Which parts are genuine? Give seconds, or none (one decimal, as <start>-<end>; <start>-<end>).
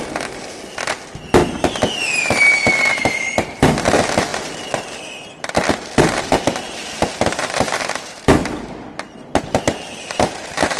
0.0-10.8